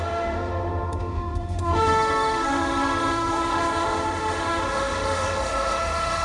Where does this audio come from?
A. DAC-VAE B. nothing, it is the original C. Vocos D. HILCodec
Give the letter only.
A